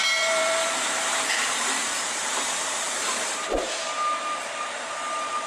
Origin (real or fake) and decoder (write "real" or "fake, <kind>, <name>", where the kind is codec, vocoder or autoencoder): fake, vocoder, BigVGAN v2